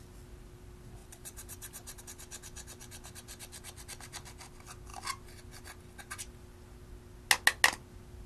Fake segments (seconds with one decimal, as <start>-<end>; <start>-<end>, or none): 1.0-2.0